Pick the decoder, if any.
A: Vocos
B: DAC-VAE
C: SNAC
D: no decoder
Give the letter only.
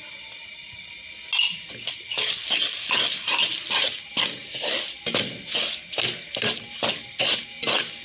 D